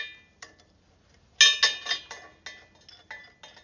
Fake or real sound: real